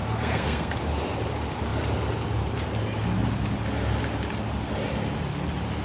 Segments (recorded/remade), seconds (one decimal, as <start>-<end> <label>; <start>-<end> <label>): 0.0-0.7 remade; 0.7-5.8 recorded